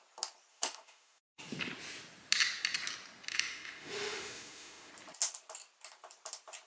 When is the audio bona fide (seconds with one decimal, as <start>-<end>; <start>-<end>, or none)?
0.0-0.5; 1.4-3.3; 4.9-6.7